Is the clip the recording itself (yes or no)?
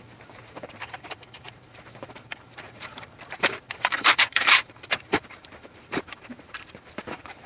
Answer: no